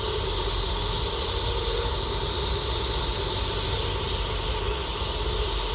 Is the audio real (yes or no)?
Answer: yes